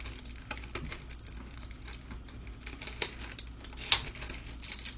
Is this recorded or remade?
recorded